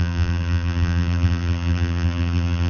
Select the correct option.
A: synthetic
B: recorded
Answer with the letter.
A